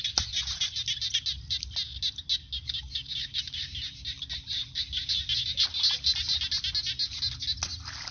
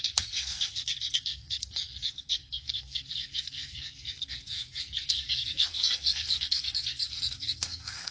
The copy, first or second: second